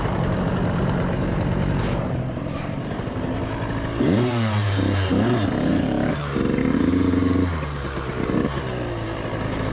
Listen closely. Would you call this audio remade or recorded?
remade